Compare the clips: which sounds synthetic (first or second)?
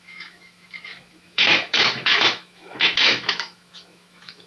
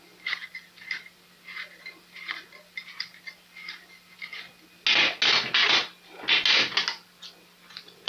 first